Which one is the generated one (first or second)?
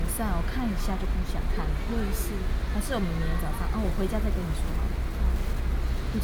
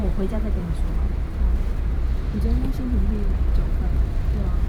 second